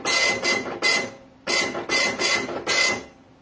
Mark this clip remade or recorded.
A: recorded